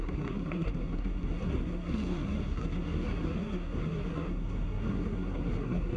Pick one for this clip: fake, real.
fake